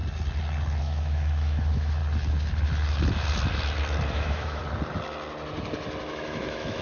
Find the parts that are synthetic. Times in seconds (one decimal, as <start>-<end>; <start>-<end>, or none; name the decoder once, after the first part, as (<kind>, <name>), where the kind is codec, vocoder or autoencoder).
0.8-2.0 (autoencoder, DAC-VAE); 4.1-4.6; 6.1-6.8